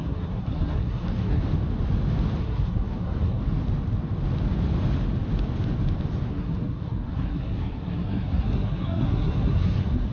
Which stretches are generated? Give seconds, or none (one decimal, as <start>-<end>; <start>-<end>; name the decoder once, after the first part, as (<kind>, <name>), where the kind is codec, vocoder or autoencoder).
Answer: 0.0-1.4 (codec, SNAC); 2.4-3.4; 6.3-10.1